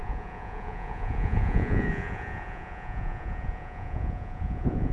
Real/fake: fake